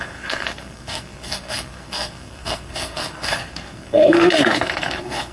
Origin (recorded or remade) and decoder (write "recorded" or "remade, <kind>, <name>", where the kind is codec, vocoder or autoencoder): remade, codec, SNAC